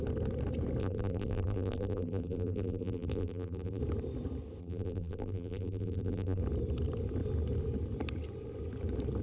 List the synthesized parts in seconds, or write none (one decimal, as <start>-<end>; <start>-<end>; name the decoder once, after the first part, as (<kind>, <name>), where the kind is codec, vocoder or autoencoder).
0.8-3.8 (vocoder, BigVGAN v2); 4.6-6.4